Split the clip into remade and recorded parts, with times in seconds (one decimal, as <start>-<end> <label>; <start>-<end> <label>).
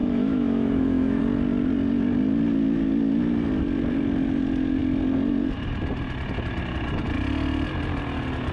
0.0-1.2 remade; 1.2-8.5 recorded